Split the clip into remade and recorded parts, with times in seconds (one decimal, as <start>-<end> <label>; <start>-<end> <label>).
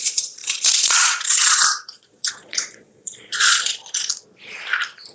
0.0-4.1 remade; 4.1-5.1 recorded